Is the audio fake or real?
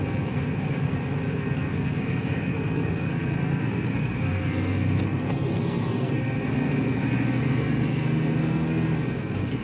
fake